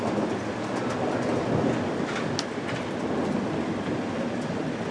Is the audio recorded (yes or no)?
yes